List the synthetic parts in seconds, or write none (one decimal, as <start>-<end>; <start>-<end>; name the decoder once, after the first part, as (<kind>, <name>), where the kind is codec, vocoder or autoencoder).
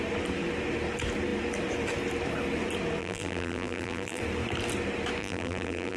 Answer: 3.0-4.2 (vocoder, BigVGAN v2); 5.2-6.0